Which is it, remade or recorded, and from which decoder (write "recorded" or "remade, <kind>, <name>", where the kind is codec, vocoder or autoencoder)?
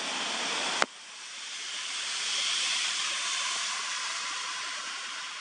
remade, vocoder, BigVGAN v2